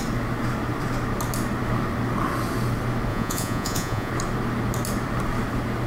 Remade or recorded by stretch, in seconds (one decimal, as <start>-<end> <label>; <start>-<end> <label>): 0.0-3.1 recorded; 3.1-4.1 remade; 4.1-5.9 recorded